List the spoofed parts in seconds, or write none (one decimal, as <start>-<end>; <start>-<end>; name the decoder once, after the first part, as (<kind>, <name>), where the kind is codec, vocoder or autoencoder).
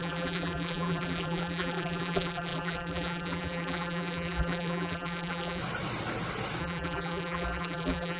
0.0-5.6 (vocoder, BigVGAN v2); 6.6-8.2